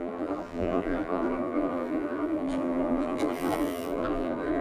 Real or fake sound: fake